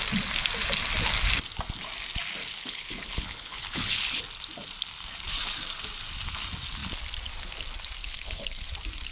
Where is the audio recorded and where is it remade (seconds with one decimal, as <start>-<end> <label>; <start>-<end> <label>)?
0.0-2.4 recorded; 2.4-4.2 remade; 4.2-8.0 recorded; 8.0-8.7 remade; 8.7-9.1 recorded